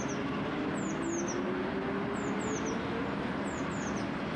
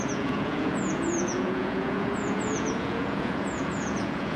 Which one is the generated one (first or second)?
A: second